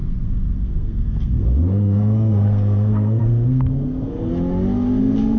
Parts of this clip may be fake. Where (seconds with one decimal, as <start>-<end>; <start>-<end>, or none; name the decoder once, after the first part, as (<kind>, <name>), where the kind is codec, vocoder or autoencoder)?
0.0-4.3 (codec, SNAC); 5.0-5.4